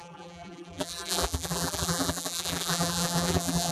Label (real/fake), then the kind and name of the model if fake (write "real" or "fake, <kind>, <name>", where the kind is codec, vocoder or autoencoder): fake, vocoder, BigVGAN v2